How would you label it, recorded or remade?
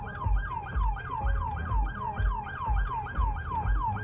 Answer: recorded